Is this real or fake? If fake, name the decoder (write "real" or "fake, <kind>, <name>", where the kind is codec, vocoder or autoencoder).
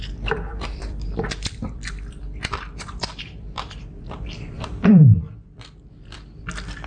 fake, vocoder, BigVGAN v2